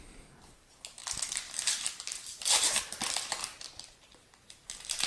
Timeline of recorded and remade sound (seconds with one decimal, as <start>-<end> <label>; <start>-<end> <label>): 0.0-1.0 recorded; 1.0-2.8 remade; 2.8-3.4 recorded; 3.4-5.1 remade

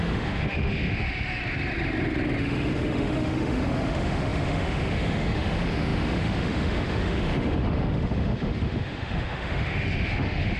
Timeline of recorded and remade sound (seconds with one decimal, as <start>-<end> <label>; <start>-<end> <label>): 0.0-1.4 remade; 1.4-2.4 recorded; 2.4-10.6 remade